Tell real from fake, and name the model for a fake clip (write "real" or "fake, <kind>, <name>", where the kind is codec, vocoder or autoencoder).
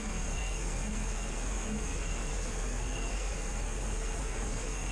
fake, codec, SNAC